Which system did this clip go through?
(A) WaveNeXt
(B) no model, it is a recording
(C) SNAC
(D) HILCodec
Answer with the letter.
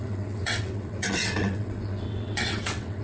A